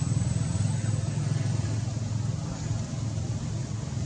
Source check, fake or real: real